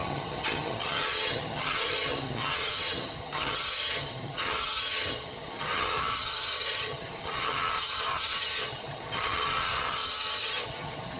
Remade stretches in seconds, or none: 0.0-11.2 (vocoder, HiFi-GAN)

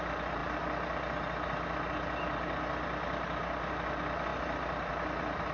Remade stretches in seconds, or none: none